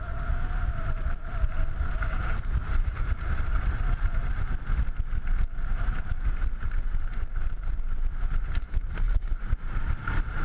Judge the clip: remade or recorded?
recorded